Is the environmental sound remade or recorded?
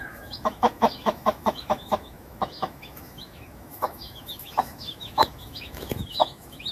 remade